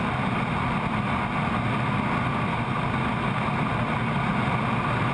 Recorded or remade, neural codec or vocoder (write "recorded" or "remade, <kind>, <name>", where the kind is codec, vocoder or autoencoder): recorded